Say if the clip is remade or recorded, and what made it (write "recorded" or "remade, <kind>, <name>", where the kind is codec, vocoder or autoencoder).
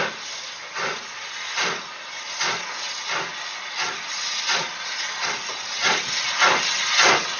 recorded